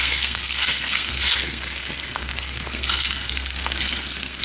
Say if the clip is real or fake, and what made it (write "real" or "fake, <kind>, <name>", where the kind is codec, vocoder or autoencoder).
fake, codec, SNAC